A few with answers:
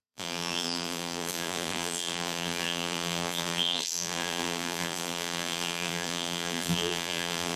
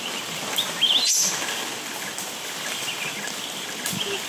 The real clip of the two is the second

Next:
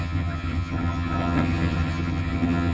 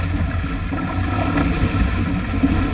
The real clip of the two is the second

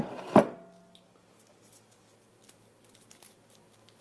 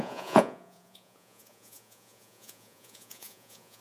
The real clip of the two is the first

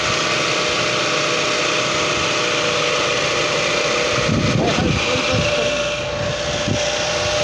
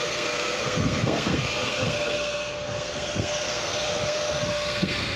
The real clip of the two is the first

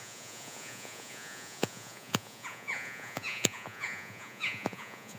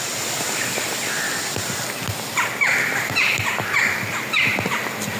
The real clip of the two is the second